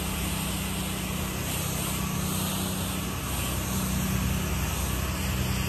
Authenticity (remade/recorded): recorded